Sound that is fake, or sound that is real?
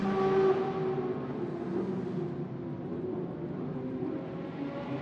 real